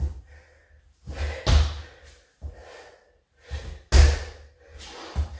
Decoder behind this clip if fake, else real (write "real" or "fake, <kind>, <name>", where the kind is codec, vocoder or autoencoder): real